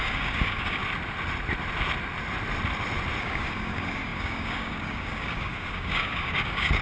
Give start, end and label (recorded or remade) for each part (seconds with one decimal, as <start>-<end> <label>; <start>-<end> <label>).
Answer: 0.0-0.8 remade; 0.8-3.2 recorded; 3.2-6.8 remade